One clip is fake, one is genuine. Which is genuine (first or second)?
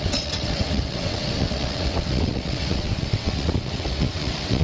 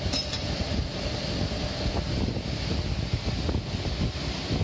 second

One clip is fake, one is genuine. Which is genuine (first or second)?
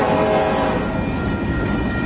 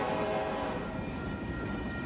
first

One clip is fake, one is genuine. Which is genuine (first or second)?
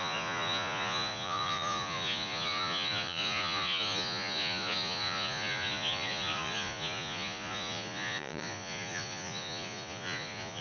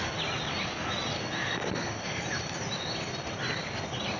second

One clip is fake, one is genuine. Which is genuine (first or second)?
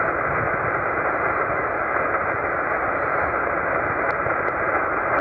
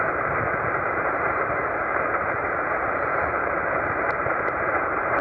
first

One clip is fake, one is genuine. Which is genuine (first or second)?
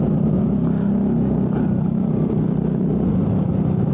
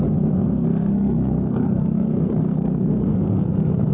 first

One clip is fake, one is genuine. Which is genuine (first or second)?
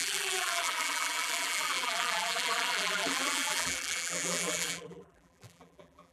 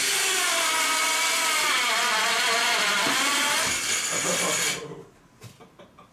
second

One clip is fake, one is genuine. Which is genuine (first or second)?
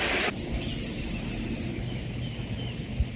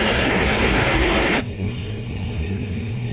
first